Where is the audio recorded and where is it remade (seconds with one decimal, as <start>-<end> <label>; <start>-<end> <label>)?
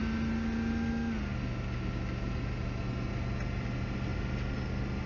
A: 0.0-5.1 recorded